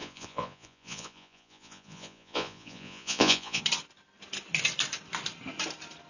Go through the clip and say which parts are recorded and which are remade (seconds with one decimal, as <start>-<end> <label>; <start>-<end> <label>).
0.0-3.6 remade; 3.6-6.1 recorded